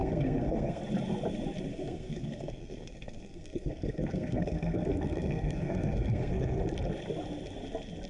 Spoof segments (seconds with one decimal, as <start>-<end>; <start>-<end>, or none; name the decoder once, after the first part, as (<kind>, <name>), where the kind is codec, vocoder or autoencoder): 0.0-0.8 (codec, SNAC); 1.7-6.6